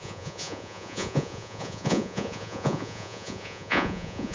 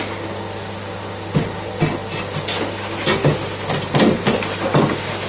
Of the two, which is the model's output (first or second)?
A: first